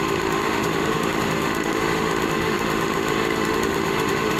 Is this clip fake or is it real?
fake